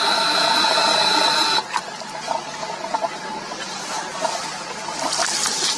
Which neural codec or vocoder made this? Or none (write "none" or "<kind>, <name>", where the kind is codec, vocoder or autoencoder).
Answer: none